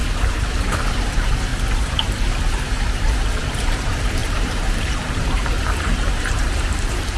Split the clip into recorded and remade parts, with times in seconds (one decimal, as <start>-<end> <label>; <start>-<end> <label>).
0.0-0.9 recorded; 0.9-1.5 remade; 1.5-3.4 recorded; 3.4-7.2 remade